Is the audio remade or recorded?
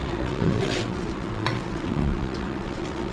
remade